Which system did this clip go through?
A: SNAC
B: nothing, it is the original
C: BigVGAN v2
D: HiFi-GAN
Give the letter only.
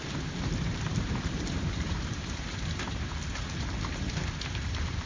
C